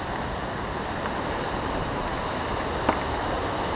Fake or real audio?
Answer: real